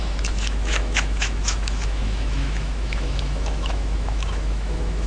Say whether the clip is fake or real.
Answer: fake